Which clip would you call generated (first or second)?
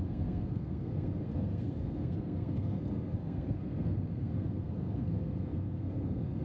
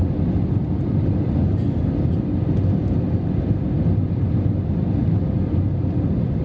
first